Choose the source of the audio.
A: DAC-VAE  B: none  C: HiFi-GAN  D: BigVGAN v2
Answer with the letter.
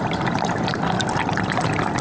B